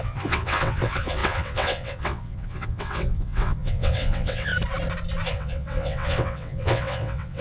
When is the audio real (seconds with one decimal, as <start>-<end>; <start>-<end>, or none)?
4.5-5.3